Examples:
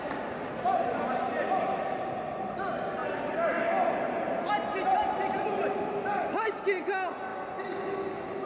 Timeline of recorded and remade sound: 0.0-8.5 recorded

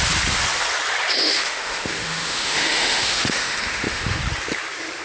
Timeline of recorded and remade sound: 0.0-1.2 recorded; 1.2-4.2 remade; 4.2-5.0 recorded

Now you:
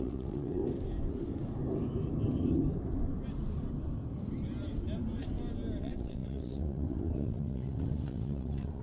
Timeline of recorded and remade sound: 0.0-0.6 remade; 0.6-5.8 recorded; 5.8-8.8 remade